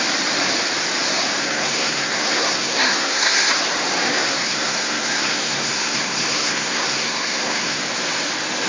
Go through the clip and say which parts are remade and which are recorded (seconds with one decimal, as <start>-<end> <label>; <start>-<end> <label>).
0.0-1.4 recorded; 1.4-3.5 remade; 3.5-4.1 recorded; 4.1-7.8 remade; 7.8-8.7 recorded